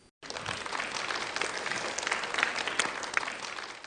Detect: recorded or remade recorded